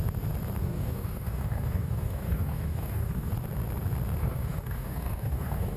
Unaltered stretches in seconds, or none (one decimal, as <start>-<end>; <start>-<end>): 0.0-0.6; 3.3-4.2